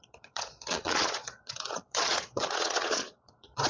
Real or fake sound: fake